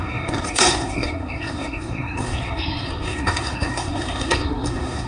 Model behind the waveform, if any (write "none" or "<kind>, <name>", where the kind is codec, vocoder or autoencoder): codec, SNAC